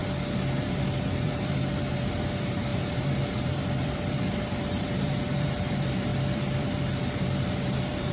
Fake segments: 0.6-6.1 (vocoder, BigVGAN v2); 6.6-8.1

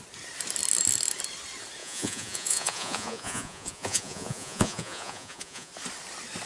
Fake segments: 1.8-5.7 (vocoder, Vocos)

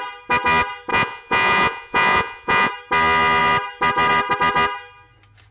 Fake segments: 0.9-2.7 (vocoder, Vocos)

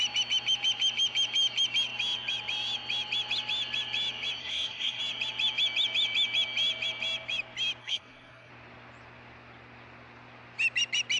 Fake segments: 4.4-5.0 (codec, SNAC); 7.8-8.5

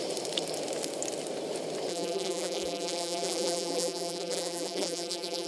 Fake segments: 1.9-5.5 (vocoder, BigVGAN v2)